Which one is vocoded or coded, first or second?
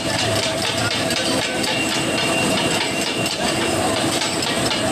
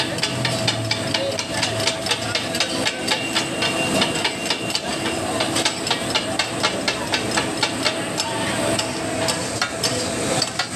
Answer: first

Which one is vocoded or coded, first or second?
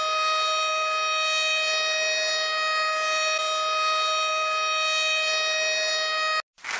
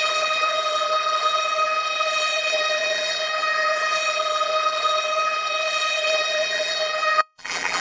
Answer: second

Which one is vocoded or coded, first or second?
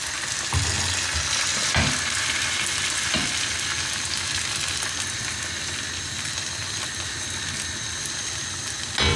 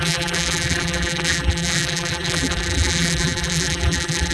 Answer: second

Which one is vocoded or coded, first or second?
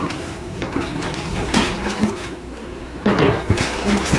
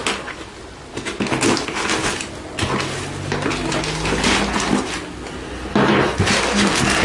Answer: first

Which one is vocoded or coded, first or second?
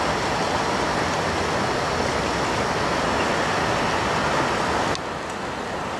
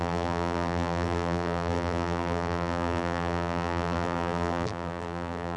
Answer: second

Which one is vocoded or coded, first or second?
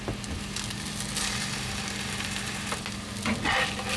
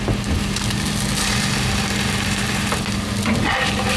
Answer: second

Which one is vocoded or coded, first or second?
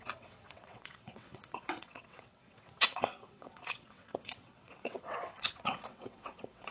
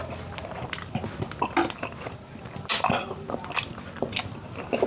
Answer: first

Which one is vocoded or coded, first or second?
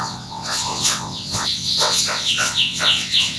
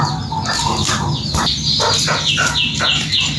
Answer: first